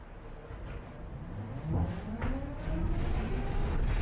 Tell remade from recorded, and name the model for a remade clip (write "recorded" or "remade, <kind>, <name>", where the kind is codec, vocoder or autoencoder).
recorded